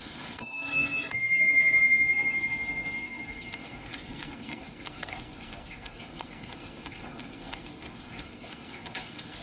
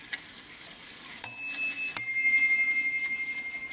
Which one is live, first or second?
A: second